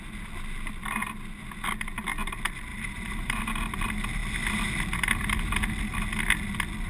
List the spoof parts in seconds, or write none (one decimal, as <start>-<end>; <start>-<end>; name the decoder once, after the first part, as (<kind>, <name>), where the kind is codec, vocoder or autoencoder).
2.7-3.4 (vocoder, BigVGAN v2)